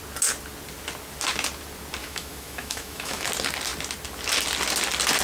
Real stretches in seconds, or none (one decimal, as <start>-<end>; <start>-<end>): 0.0-2.0; 3.3-5.2